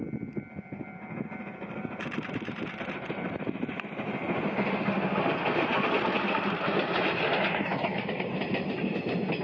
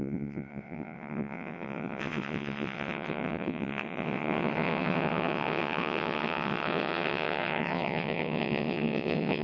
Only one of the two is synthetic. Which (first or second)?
second